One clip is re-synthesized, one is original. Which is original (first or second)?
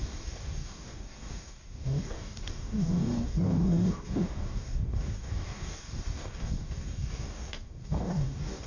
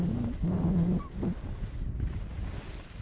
second